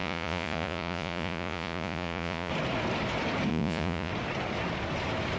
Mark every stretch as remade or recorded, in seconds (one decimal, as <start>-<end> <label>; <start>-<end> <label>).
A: 0.0-2.5 remade; 2.5-3.5 recorded; 3.5-4.1 remade; 4.1-5.4 recorded